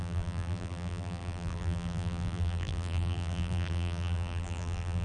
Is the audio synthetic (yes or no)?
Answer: yes